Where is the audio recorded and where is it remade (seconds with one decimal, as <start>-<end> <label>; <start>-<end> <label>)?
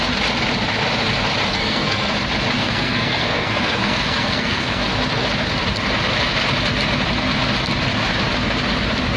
0.0-1.5 recorded; 1.5-2.1 remade; 2.1-2.6 recorded; 2.6-4.8 remade; 4.8-9.2 recorded